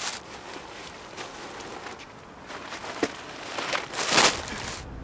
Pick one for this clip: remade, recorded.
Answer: recorded